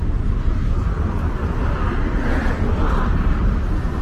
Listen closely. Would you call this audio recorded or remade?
recorded